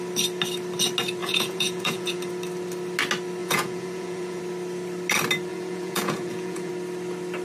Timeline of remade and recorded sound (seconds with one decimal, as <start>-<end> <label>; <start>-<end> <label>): 0.0-1.2 recorded; 1.2-2.3 remade; 2.3-3.4 recorded; 3.4-4.4 remade; 4.4-5.5 recorded; 5.5-6.7 remade; 6.7-7.4 recorded